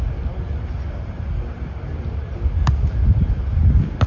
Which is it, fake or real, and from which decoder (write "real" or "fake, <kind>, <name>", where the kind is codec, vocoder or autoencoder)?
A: real